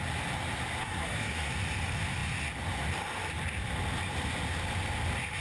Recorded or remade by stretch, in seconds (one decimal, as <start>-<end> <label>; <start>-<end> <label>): 0.0-0.8 recorded; 0.8-1.5 remade; 1.5-5.4 recorded